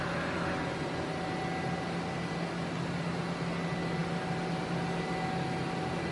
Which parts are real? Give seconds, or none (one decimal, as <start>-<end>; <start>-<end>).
0.0-6.1